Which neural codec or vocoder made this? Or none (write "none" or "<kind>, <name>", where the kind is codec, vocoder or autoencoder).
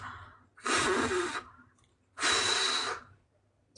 none